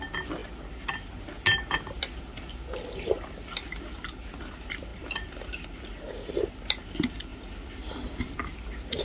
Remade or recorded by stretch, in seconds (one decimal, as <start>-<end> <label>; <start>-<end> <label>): 0.0-4.9 recorded; 4.9-6.1 remade; 6.1-7.3 recorded; 7.3-9.0 remade